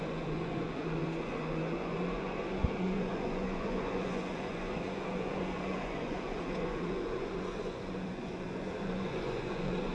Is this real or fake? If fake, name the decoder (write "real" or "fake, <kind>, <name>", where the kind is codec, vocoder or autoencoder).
fake, vocoder, Vocos